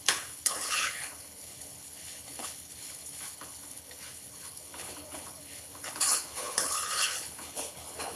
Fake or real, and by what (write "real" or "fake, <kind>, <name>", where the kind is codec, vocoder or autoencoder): fake, codec, HILCodec